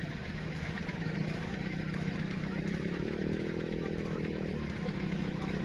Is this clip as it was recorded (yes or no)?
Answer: no